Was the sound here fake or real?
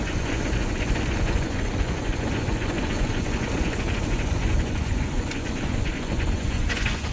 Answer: fake